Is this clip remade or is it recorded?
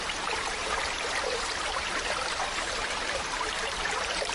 remade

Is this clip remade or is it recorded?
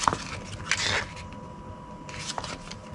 recorded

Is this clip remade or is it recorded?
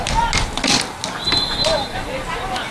recorded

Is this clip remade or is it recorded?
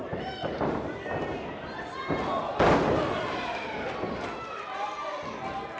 recorded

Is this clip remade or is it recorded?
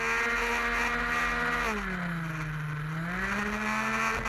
recorded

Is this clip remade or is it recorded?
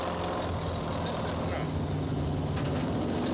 recorded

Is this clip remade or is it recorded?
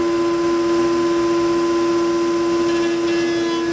recorded